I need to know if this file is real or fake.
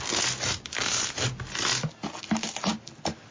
real